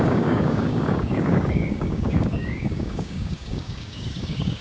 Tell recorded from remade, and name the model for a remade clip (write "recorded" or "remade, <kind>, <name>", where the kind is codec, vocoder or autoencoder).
remade, codec, DAC